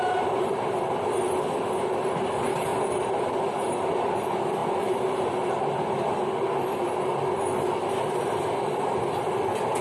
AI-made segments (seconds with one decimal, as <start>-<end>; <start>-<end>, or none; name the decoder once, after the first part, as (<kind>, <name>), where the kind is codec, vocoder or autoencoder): 2.7-3.3 (vocoder, BigVGAN v2); 4.6-5.5